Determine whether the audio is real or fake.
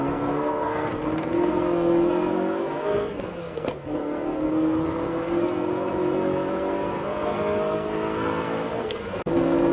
fake